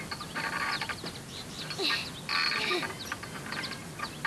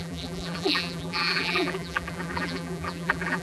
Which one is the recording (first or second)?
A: first